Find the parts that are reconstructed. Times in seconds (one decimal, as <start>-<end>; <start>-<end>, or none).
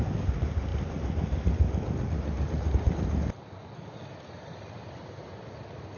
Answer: none